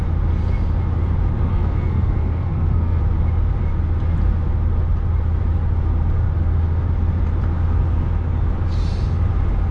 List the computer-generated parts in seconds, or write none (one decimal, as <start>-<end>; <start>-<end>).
1.5-3.0